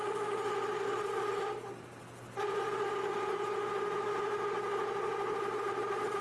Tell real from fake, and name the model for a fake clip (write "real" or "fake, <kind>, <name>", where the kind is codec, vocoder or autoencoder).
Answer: real